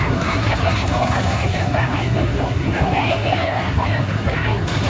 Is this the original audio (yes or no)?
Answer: no